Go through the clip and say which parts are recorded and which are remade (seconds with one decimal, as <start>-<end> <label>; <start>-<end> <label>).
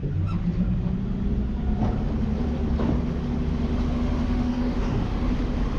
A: 0.0-4.0 recorded; 4.0-5.3 remade; 5.3-5.8 recorded